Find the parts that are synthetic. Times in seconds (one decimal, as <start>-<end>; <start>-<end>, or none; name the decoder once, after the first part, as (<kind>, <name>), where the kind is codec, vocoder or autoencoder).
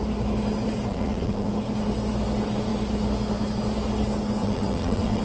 0.9-1.5 (vocoder, WaveNeXt); 4.4-5.2